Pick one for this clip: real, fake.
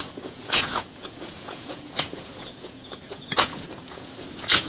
fake